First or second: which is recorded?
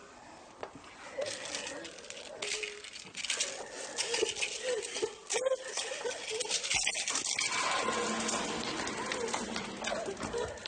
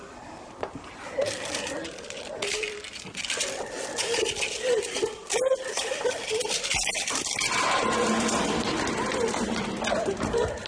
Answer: first